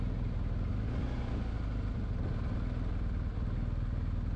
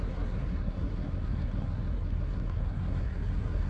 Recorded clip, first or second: first